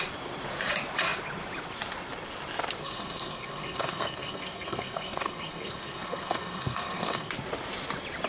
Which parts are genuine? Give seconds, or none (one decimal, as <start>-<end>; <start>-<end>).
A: 0.0-2.8; 7.3-8.3